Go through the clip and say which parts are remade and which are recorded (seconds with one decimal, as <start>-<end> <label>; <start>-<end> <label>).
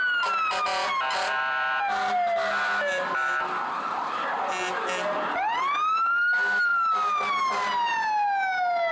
0.0-8.9 recorded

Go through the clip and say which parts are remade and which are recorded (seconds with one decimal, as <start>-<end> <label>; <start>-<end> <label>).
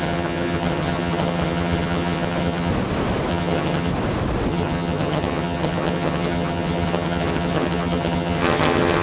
0.0-2.7 remade; 2.7-3.3 recorded; 3.3-3.9 remade; 3.9-4.5 recorded; 4.5-9.0 remade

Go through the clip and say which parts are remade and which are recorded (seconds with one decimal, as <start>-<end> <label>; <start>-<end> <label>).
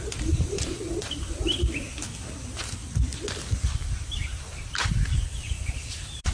0.0-6.3 recorded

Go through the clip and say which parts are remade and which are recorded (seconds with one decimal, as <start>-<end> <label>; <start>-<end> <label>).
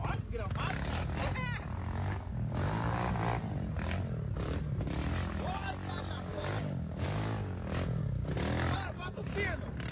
0.0-1.8 recorded; 1.8-3.1 remade; 3.1-6.3 recorded; 6.3-8.0 remade; 8.0-9.9 recorded